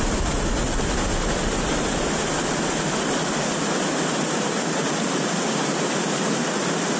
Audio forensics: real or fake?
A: real